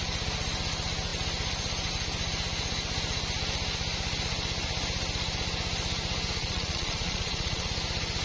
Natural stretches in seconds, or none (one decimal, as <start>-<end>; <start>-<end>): 0.0-6.4; 7.7-8.2